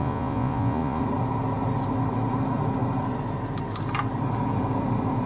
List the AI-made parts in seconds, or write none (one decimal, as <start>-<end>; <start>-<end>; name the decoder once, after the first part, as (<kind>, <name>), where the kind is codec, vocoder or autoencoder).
0.0-1.0 (vocoder, Vocos)